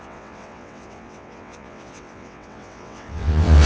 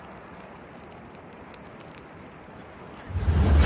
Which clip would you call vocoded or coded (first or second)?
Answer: first